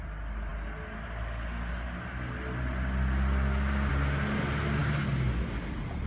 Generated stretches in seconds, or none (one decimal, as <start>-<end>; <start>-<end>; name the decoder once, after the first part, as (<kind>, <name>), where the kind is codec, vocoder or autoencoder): none